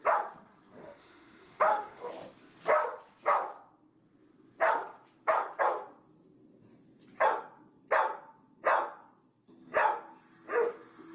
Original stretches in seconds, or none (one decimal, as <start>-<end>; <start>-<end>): 0.0-0.8; 2.1-11.1